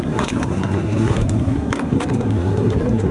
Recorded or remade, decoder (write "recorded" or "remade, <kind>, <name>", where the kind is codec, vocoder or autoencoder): remade, codec, SNAC